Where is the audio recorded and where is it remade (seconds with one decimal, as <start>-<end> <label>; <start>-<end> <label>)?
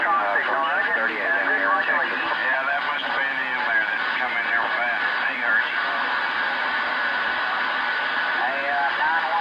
0.0-9.4 recorded